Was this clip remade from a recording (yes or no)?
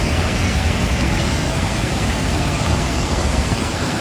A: yes